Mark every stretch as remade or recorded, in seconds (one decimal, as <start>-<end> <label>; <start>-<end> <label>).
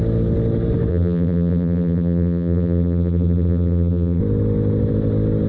0.0-0.9 recorded; 0.9-4.2 remade; 4.2-5.5 recorded